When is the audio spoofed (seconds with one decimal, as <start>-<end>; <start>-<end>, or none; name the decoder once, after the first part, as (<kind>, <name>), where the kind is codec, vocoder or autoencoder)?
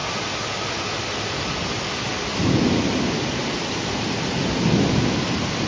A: none